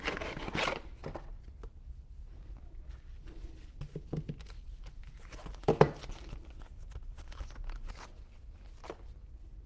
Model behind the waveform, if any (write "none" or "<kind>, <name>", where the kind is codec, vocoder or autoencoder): none